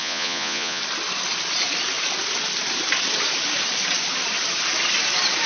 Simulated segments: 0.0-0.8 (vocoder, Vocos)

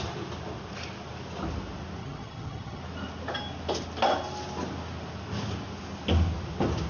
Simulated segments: 2.0-2.8 (vocoder, HiFi-GAN)

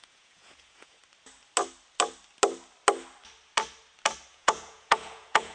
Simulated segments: 0.0-1.0 (vocoder, Vocos); 4.3-5.5

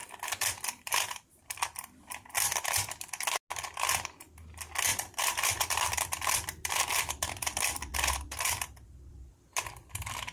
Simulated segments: 0.0-2.1 (vocoder, BigVGAN v2); 4.9-9.3

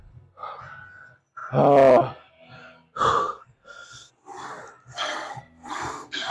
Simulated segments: 3.2-4.1 (codec, SNAC); 4.9-6.3

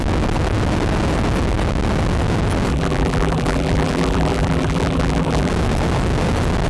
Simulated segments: 2.7-5.5 (vocoder, BigVGAN v2)